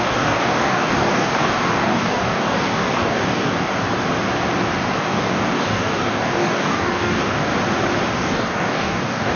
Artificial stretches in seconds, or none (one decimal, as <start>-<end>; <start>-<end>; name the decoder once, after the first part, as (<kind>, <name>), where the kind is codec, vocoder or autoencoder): 0.0-3.7 (codec, DAC); 5.0-7.5; 8.1-9.4